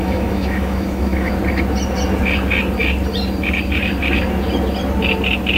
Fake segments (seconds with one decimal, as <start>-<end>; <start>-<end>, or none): 0.0-1.3